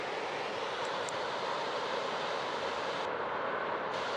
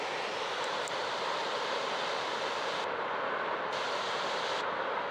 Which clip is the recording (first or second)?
first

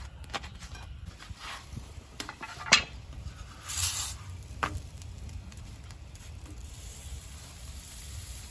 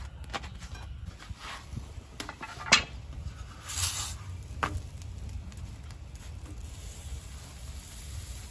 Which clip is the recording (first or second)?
second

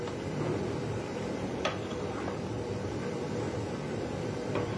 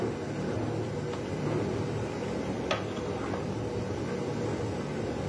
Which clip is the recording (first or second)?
second